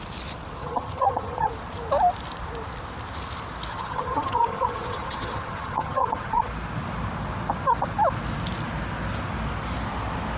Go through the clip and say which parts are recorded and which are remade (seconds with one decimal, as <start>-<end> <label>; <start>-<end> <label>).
0.0-0.6 recorded; 0.6-1.5 remade; 1.5-3.7 recorded; 3.7-6.5 remade; 6.5-10.4 recorded